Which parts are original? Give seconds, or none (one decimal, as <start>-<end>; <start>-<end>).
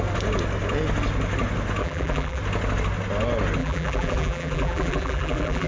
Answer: 0.0-1.8; 2.4-3.6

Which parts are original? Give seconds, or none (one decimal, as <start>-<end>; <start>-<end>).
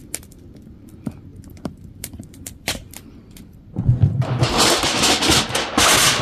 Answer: 0.0-1.3; 3.6-6.2